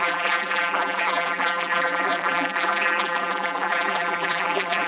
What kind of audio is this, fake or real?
fake